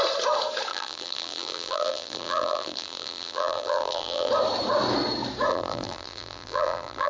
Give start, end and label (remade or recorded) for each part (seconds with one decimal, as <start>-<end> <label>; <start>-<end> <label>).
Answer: 0.0-0.7 recorded; 0.7-4.3 remade; 4.3-5.5 recorded; 5.5-7.1 remade